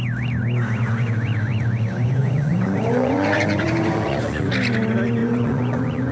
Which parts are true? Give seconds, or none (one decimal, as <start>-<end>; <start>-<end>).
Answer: 0.0-0.8; 4.5-5.2